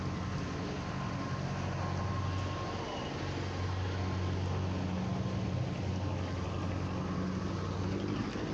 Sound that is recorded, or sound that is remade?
recorded